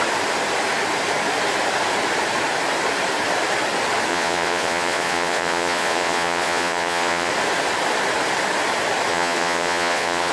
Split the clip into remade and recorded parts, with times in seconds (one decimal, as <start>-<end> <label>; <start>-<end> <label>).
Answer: 0.0-4.1 recorded; 4.1-7.3 remade; 7.3-9.1 recorded; 9.1-10.3 remade